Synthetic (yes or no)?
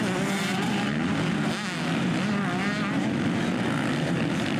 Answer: no